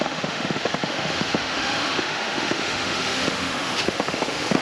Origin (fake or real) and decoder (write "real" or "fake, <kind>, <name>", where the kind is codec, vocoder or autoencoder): fake, autoencoder, DAC-VAE